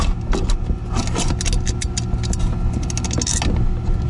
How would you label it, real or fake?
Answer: real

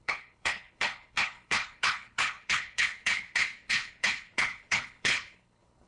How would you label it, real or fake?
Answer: fake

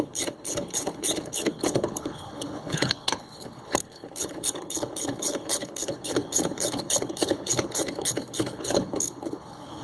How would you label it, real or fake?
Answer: fake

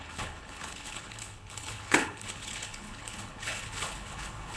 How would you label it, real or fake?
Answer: fake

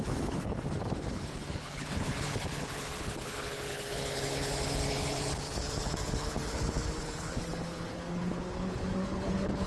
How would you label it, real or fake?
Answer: fake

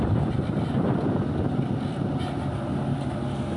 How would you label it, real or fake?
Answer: real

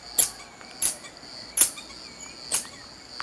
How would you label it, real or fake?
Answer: real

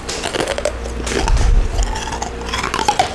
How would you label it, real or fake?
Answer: real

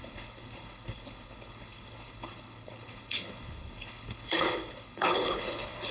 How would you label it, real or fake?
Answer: fake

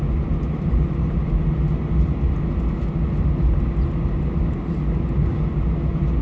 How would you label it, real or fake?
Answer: real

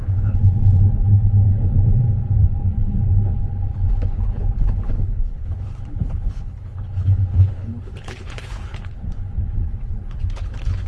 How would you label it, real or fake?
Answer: fake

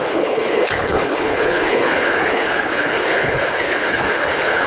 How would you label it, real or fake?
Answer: fake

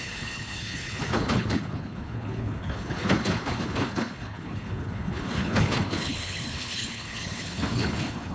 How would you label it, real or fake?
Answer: fake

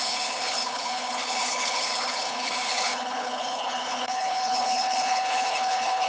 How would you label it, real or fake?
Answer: fake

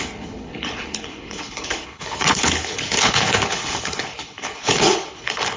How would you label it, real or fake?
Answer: fake